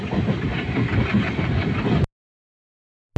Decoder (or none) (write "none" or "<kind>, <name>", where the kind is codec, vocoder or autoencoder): none